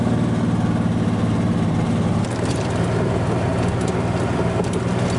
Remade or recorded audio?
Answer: recorded